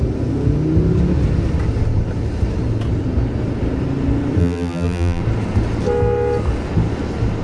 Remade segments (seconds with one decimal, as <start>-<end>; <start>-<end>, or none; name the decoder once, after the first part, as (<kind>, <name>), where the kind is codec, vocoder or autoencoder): 4.4-5.2 (vocoder, BigVGAN v2)